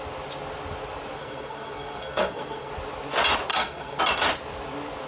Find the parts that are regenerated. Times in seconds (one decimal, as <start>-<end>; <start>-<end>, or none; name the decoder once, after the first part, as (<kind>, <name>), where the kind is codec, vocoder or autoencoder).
1.2-2.7 (codec, SNAC); 3.5-4.0